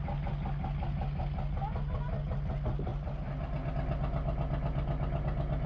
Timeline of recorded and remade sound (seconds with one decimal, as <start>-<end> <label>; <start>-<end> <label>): 0.0-5.7 recorded